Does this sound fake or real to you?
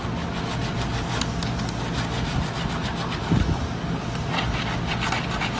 real